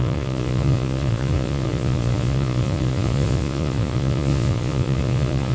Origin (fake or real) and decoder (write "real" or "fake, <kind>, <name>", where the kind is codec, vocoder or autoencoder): fake, vocoder, Vocos